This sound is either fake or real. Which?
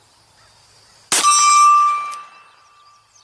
real